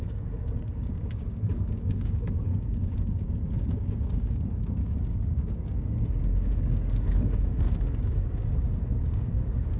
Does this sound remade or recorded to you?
remade